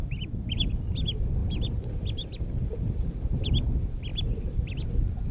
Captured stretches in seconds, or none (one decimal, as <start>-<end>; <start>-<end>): 0.0-5.3